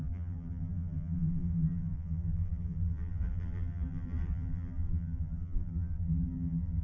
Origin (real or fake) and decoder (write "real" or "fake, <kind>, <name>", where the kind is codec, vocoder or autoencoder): fake, vocoder, BigVGAN v2